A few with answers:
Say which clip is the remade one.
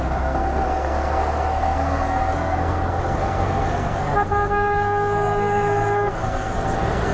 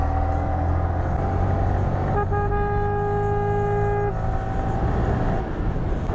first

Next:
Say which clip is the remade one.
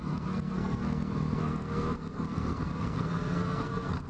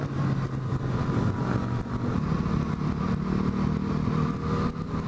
first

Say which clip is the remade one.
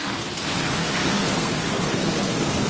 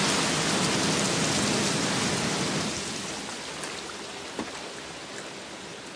first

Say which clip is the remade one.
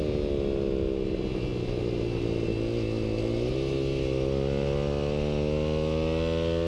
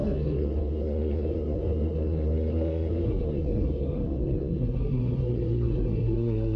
second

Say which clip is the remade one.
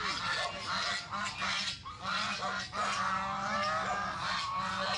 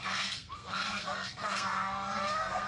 second